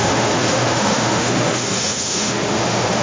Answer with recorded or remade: remade